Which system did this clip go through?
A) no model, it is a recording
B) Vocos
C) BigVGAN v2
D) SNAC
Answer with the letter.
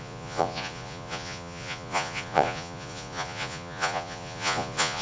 B